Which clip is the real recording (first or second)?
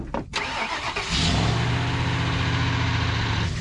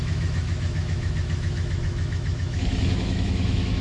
first